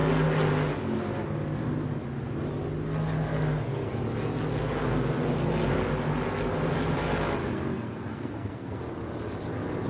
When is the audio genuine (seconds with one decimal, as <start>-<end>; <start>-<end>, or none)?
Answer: 0.0-3.5; 4.0-7.4; 8.8-9.9

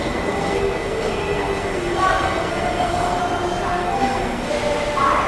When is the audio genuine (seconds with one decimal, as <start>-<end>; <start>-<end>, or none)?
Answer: 3.2-3.8; 4.5-5.3

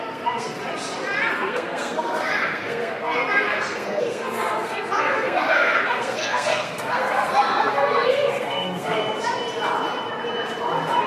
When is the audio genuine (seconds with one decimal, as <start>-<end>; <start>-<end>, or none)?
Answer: 0.6-1.3; 9.0-11.1

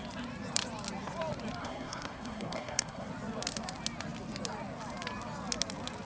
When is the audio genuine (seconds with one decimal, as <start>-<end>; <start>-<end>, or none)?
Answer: 0.0-1.6; 3.1-6.0

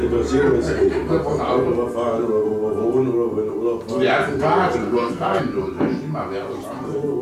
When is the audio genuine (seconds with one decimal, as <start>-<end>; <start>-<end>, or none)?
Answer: 0.0-4.8; 5.4-7.2

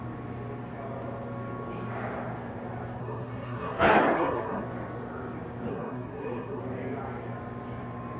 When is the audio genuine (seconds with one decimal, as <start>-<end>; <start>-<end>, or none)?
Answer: 0.0-3.0; 4.6-5.7; 6.6-8.2

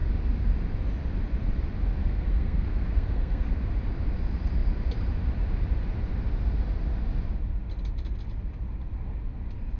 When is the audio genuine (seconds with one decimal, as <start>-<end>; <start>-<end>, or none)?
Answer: 0.0-2.0; 3.5-9.8